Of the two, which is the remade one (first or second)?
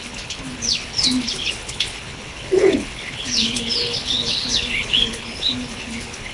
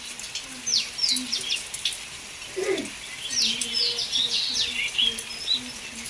first